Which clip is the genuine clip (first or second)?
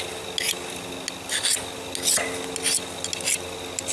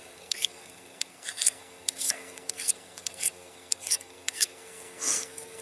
first